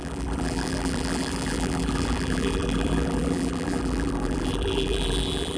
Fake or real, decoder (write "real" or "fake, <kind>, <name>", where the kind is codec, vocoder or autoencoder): fake, vocoder, BigVGAN v2